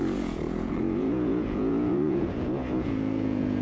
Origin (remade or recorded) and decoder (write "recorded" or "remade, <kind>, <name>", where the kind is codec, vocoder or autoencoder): remade, vocoder, Vocos